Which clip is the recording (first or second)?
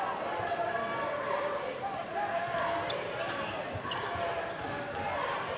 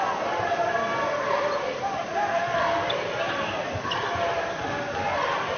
first